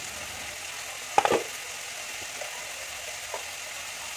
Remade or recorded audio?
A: recorded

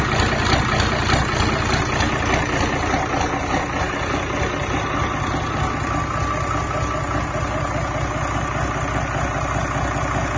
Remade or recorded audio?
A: recorded